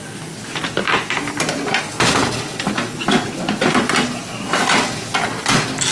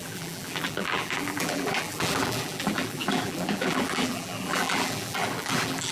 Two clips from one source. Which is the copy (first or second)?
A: second